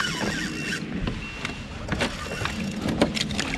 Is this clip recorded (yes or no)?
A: yes